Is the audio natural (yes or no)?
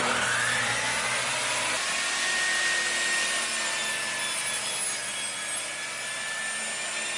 yes